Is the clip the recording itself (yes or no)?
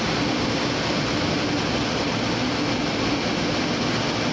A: yes